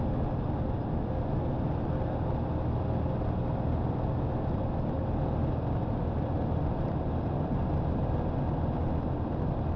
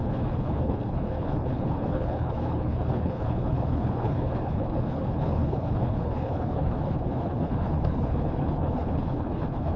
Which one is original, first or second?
first